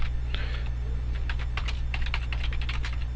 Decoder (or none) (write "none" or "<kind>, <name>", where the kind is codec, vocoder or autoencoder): none